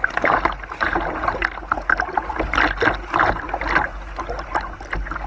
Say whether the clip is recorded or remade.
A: recorded